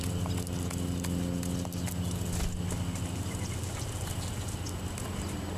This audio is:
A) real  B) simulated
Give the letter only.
A